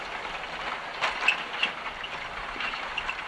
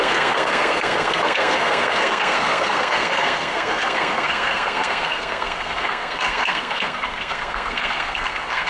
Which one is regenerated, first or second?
second